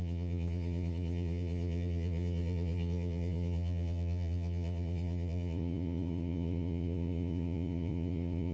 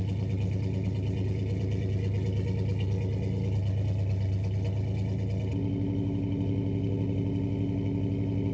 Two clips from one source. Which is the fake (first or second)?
first